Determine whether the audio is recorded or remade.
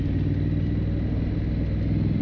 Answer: recorded